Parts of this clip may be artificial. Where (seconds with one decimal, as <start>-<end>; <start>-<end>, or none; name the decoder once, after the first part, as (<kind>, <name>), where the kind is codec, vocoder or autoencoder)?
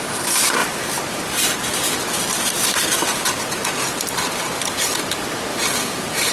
0.6-4.4 (vocoder, BigVGAN v2); 5.5-6.3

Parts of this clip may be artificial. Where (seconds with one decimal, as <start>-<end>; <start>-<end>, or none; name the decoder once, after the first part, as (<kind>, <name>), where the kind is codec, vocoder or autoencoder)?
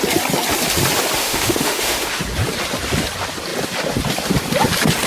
1.2-2.2 (autoencoder, DAC-VAE)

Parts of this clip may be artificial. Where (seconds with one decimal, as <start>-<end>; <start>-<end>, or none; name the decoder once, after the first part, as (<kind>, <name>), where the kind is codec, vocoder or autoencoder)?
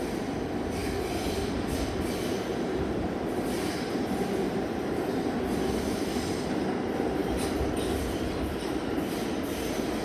none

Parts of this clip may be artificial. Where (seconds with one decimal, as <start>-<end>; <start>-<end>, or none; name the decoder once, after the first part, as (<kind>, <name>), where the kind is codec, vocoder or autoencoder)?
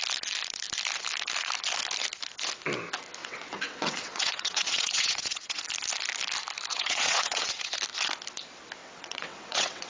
3.2-5.6 (vocoder, WaveNeXt); 6.7-7.7; 8.8-9.9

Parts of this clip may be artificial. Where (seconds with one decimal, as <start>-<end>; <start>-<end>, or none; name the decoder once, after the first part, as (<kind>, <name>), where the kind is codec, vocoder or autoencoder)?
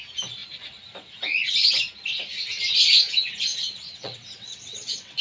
3.5-5.2 (vocoder, WaveNeXt)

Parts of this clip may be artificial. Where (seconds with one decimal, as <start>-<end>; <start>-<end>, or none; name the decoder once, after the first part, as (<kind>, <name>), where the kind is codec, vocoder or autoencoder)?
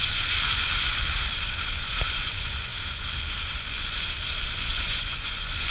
0.0-5.7 (vocoder, Vocos)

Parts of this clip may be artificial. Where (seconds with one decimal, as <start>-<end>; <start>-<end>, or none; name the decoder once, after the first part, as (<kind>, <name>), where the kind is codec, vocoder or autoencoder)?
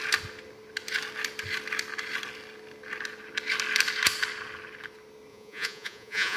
5.3-6.4 (vocoder, Vocos)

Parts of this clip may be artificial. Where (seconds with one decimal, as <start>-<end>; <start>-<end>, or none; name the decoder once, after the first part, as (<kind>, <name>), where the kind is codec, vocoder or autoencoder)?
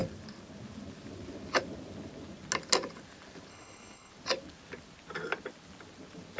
3.5-4.1 (codec, HILCodec)